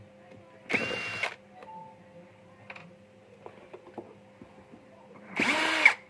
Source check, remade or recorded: recorded